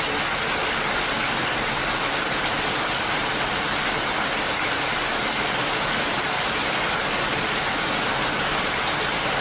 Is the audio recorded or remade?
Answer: recorded